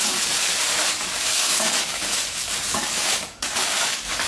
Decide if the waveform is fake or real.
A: fake